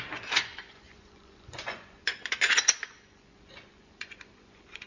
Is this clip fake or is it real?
fake